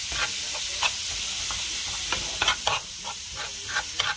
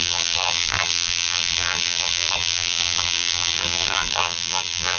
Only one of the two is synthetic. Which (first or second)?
second